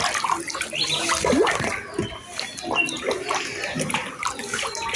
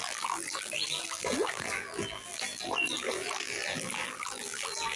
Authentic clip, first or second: first